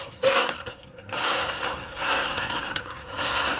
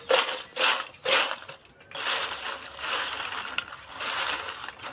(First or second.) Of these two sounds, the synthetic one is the first